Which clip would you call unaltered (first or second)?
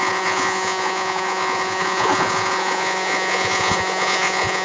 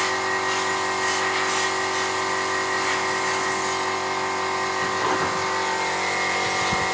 second